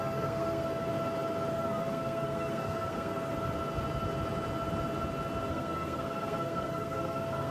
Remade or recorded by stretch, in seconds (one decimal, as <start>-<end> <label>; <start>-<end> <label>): 0.0-0.9 remade; 0.9-1.5 recorded; 1.5-3.3 remade; 3.3-5.5 recorded; 5.5-7.5 remade